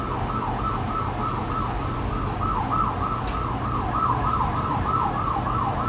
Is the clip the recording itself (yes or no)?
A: yes